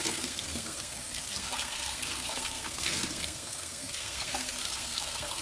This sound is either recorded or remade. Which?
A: remade